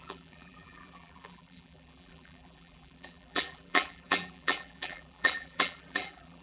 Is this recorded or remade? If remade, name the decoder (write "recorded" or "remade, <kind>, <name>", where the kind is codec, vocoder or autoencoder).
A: remade, vocoder, BigVGAN v2